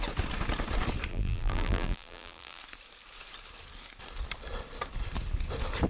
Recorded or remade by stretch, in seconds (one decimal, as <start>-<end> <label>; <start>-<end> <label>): 0.0-1.1 recorded; 1.1-2.6 remade; 2.6-5.9 recorded